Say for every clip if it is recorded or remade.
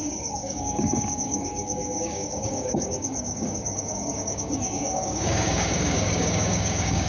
remade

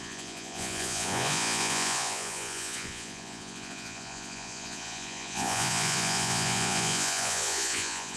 remade